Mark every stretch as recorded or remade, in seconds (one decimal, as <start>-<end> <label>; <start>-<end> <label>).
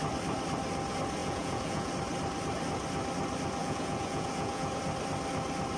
0.0-1.2 recorded; 1.2-1.9 remade; 1.9-3.6 recorded; 3.6-4.7 remade; 4.7-5.8 recorded